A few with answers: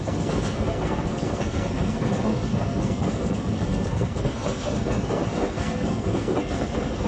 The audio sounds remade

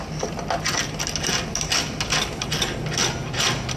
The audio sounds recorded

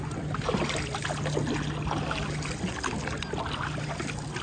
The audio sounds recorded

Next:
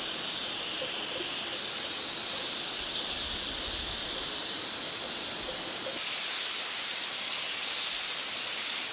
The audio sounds recorded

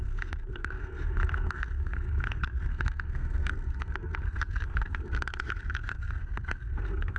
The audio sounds remade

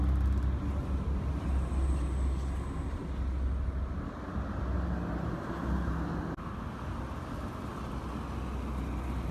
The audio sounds recorded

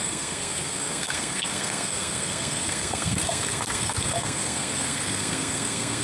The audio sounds remade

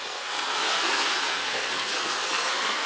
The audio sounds remade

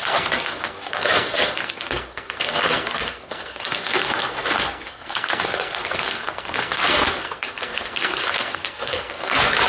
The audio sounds remade